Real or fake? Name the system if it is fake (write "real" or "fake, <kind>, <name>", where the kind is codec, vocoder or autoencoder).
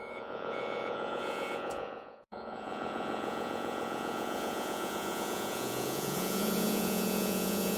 fake, vocoder, Vocos